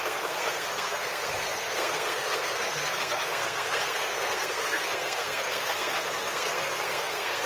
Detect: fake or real fake